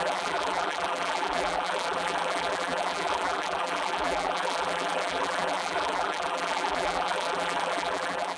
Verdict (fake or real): fake